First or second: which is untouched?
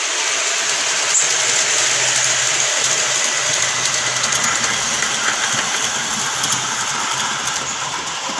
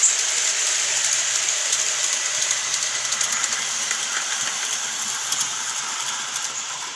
first